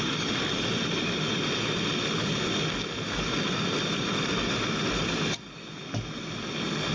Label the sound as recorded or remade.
recorded